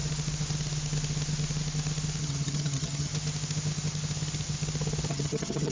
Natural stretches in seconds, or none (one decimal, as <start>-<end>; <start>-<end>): 0.0-2.2; 3.1-5.1